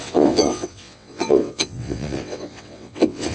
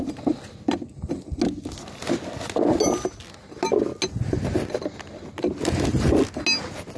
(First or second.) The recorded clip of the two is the second